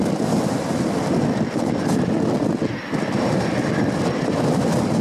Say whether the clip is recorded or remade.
recorded